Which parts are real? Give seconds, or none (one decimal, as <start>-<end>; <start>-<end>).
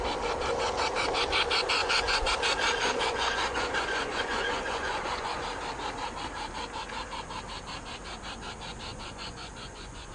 0.0-1.8; 2.3-2.9; 5.4-8.9